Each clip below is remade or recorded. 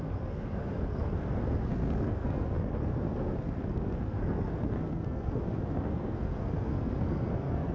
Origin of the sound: remade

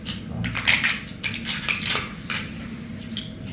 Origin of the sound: recorded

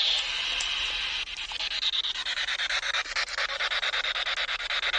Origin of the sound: recorded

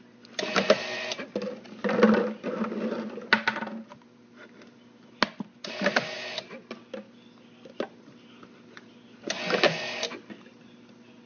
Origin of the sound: recorded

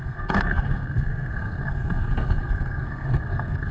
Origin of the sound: remade